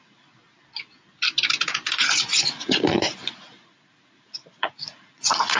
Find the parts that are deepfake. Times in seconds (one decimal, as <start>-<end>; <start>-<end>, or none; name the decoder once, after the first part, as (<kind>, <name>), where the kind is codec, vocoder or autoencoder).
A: 0.0-0.4 (vocoder, Vocos); 2.5-5.6